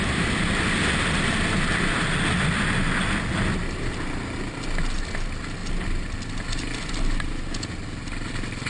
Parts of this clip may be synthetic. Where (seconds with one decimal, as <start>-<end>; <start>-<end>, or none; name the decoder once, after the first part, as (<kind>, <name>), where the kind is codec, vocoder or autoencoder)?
none